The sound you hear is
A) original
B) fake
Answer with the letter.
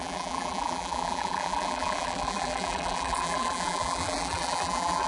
B